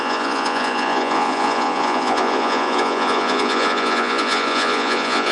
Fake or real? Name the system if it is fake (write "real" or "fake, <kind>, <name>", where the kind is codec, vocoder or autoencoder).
fake, vocoder, Vocos